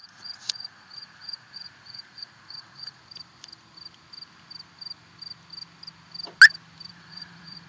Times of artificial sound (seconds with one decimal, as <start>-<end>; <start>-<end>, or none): 0.0-3.0; 6.9-7.7